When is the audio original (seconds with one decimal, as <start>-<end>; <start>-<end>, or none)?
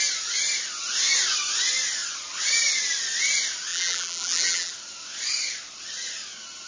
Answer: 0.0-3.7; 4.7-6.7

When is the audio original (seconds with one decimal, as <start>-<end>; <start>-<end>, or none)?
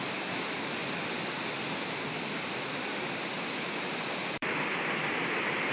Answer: 0.8-3.0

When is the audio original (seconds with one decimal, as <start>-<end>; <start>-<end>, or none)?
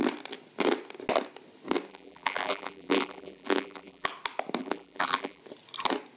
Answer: 0.0-1.9; 4.1-4.6; 5.4-6.2